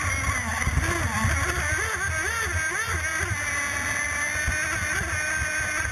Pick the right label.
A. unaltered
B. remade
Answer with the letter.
A